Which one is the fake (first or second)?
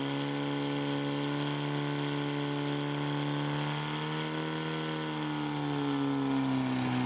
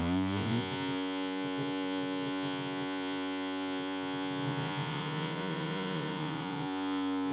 second